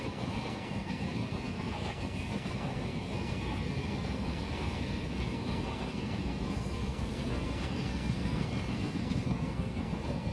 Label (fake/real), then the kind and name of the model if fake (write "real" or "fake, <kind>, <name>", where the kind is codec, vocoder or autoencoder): fake, codec, SNAC